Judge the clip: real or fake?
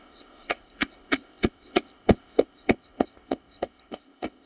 fake